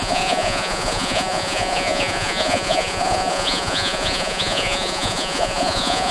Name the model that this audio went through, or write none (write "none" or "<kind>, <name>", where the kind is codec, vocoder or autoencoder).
vocoder, Vocos